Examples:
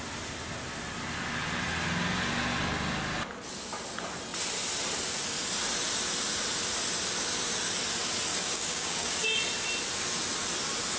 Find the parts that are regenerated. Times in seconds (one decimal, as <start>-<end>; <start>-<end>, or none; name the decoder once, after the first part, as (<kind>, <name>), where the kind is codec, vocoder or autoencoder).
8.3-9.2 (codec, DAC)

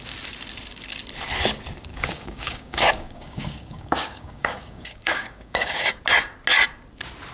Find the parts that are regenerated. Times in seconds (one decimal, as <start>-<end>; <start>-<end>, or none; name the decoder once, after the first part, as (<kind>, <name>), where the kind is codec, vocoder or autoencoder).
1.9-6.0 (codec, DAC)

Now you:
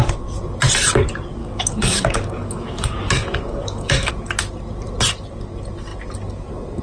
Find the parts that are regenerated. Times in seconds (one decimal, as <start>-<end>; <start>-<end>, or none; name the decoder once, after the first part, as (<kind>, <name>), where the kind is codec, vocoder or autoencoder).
1.4-4.1 (codec, DAC)

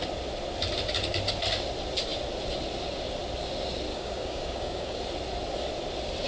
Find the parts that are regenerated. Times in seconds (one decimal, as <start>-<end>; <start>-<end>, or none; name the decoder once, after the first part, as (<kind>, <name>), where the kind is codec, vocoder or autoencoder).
3.9-5.0 (codec, DAC)

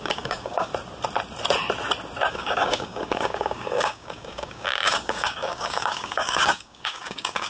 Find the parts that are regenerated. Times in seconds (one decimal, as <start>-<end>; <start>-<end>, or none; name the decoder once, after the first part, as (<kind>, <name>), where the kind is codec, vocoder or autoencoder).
0.0-0.7 (codec, DAC); 2.3-7.5

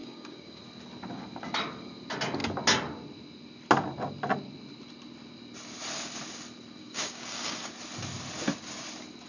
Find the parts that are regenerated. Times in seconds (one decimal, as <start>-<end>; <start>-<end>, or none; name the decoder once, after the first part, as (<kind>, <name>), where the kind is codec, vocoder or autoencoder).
0.0-0.6 (codec, DAC); 6.8-7.7

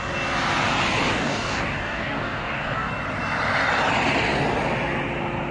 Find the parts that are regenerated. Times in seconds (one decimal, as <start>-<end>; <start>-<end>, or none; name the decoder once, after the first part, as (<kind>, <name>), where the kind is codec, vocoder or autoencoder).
1.1-2.9 (codec, DAC)